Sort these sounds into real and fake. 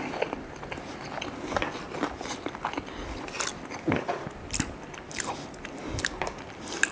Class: real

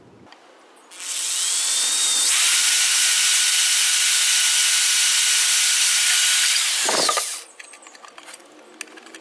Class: real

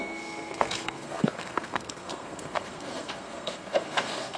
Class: fake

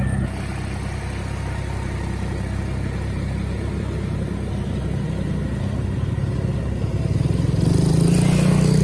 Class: real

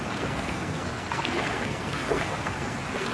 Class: fake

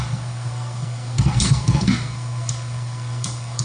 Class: fake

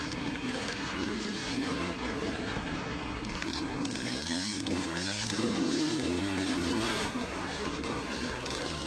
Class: fake